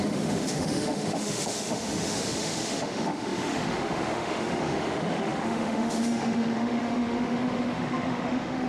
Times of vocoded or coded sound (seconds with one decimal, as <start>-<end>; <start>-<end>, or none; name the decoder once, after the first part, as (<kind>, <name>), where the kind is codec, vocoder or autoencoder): 0.0-8.7 (autoencoder, DAC-VAE)